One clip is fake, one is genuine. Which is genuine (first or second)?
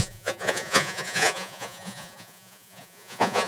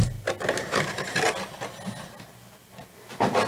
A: second